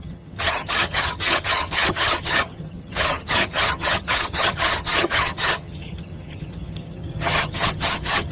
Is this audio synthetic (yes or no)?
yes